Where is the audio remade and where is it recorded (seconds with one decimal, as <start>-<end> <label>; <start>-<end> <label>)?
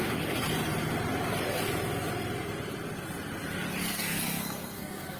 0.0-3.9 recorded; 3.9-5.2 remade